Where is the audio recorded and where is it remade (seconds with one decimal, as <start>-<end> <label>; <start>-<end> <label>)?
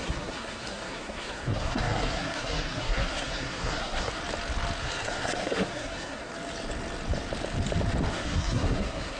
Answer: 0.0-4.2 remade; 4.2-4.8 recorded; 4.8-6.3 remade; 6.3-8.1 recorded; 8.1-9.2 remade